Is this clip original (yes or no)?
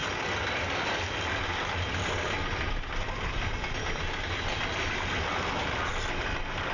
yes